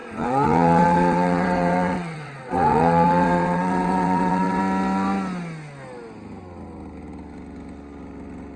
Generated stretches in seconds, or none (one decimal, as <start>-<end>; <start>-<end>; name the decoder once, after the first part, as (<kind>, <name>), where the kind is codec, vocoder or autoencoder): 0.0-4.6 (vocoder, WaveNeXt)